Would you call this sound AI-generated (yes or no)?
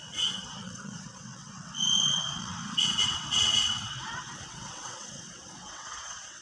yes